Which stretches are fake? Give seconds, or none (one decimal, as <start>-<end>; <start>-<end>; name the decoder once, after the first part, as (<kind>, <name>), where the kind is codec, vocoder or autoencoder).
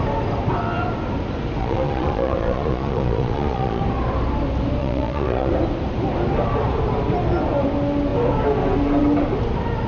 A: 1.6-3.8 (vocoder, Vocos); 4.8-5.5